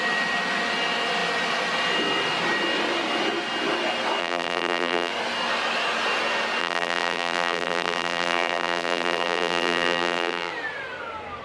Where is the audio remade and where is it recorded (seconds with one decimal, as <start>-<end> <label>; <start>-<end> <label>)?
0.0-4.2 recorded; 4.2-5.1 remade; 5.1-6.6 recorded; 6.6-10.5 remade; 10.5-11.4 recorded